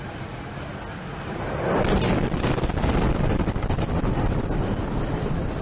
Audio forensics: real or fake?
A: real